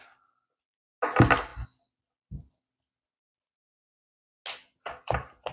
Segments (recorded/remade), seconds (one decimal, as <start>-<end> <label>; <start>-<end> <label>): 0.0-5.5 recorded